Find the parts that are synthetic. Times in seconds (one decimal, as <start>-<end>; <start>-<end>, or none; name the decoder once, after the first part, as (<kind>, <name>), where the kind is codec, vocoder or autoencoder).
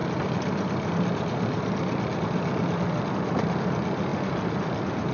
0.0-3.1 (vocoder, BigVGAN v2)